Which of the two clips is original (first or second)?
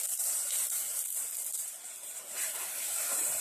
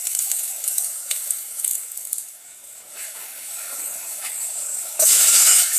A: first